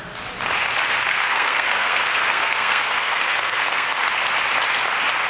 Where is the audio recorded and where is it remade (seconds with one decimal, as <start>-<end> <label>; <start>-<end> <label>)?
0.0-1.1 recorded; 1.1-4.1 remade; 4.1-5.3 recorded